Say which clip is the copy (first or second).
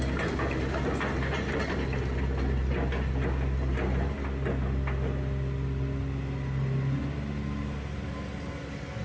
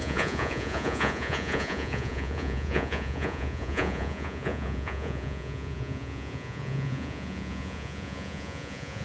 second